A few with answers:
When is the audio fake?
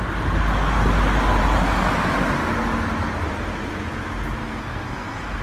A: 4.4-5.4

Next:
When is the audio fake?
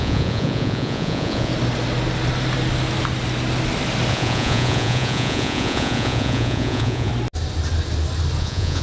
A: 0.0-1.5; 4.1-7.1; 8.4-8.8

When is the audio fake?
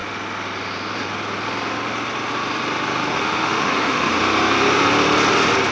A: 3.1-4.1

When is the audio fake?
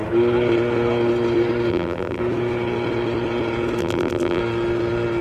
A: 1.7-2.2; 3.8-4.4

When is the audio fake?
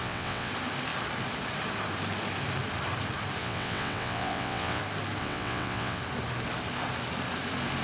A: 0.0-0.5; 3.4-4.8; 5.2-6.0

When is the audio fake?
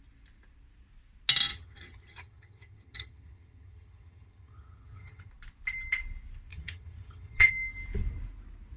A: 1.5-5.3; 6.5-7.5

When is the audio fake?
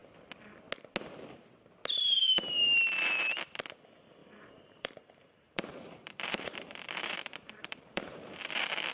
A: 4.2-8.4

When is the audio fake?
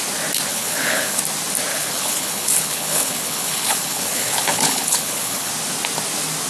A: 0.5-1.2; 1.7-5.5